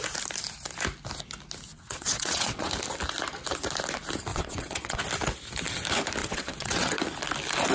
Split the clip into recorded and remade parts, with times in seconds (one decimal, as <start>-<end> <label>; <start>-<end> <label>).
0.0-1.7 recorded; 1.7-2.7 remade; 2.7-4.3 recorded; 4.3-5.0 remade; 5.0-6.2 recorded; 6.2-7.0 remade; 7.0-7.7 recorded